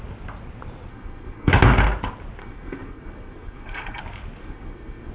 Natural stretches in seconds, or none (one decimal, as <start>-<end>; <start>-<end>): 0.0-0.9; 1.5-2.4; 4.0-4.4